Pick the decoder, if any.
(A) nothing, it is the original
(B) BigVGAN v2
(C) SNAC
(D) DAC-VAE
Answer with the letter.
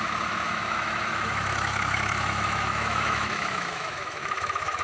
D